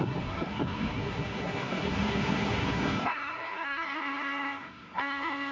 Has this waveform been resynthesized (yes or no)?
yes